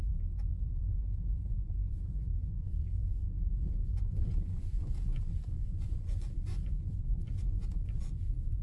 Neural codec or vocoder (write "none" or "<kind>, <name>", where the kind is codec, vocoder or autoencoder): vocoder, Vocos